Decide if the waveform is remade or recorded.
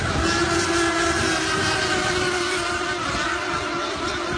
recorded